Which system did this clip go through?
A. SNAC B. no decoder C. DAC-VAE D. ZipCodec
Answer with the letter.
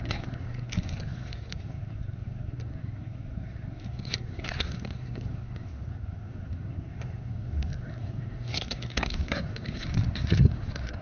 A